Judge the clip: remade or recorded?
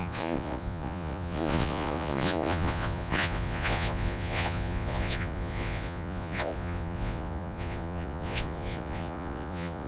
remade